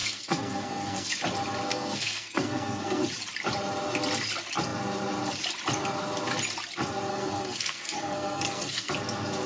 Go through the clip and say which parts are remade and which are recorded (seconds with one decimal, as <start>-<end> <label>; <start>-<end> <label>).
0.0-1.2 remade; 1.2-1.7 recorded; 1.7-3.0 remade; 3.0-7.1 recorded; 7.1-8.9 remade; 8.9-9.5 recorded